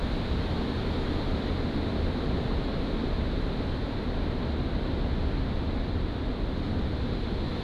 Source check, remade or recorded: recorded